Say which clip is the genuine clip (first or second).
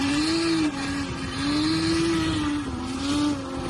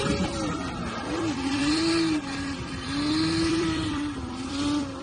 first